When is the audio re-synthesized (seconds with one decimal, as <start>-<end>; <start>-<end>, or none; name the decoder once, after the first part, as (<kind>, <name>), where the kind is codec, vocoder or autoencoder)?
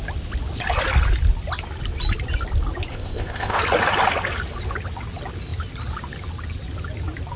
2.9-3.6 (codec, ZipCodec)